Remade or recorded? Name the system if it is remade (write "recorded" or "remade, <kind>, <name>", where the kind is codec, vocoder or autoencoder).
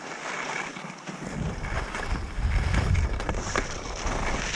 recorded